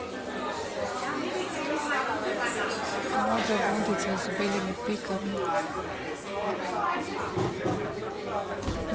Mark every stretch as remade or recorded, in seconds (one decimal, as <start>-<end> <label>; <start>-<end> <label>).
0.0-0.7 remade; 0.7-5.1 recorded; 5.1-8.9 remade

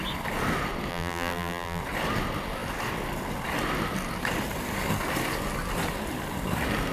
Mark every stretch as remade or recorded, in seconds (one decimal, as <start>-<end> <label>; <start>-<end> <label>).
0.0-0.9 recorded; 0.9-1.8 remade; 1.8-6.9 recorded

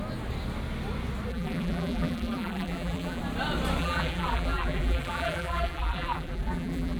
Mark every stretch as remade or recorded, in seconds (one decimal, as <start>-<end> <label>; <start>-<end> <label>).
0.0-1.3 recorded; 1.3-3.2 remade; 3.2-3.8 recorded; 3.8-7.0 remade